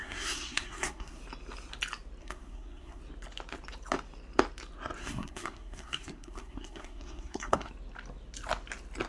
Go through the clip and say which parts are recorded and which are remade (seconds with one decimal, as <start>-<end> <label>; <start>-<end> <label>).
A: 0.0-1.2 remade; 1.2-2.2 recorded; 2.2-3.0 remade; 3.0-5.0 recorded; 5.0-7.7 remade; 7.7-9.1 recorded